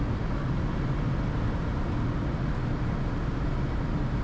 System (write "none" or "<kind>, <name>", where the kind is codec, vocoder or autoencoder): none